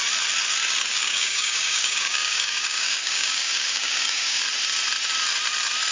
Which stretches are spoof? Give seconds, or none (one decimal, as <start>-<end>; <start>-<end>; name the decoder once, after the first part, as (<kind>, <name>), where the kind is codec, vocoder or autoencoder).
0.9-4.4 (codec, DAC)